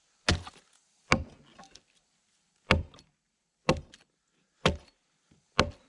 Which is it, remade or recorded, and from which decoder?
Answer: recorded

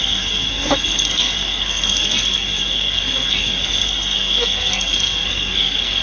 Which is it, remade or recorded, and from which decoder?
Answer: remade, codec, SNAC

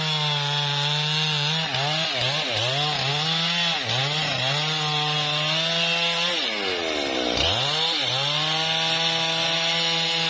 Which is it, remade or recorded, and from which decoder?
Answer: recorded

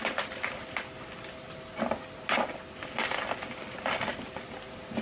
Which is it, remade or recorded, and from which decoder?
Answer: recorded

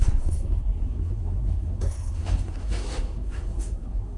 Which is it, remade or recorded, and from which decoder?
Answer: remade, codec, SNAC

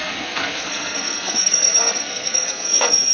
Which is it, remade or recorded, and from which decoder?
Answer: remade, codec, SNAC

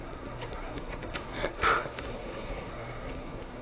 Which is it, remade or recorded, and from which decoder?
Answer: remade, codec, SNAC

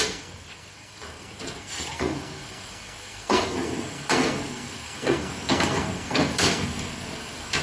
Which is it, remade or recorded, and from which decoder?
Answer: remade, codec, SNAC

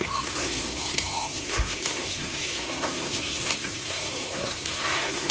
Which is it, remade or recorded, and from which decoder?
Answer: remade, codec, SNAC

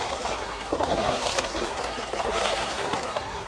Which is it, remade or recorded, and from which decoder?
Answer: remade, codec, SNAC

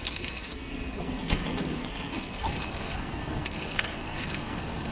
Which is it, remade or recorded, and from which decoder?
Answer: remade, codec, SNAC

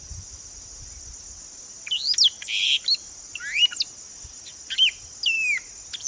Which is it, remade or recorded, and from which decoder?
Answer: recorded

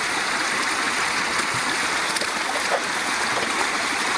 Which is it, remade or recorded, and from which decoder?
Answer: recorded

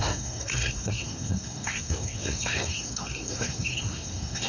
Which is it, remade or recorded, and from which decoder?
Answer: remade, codec, SNAC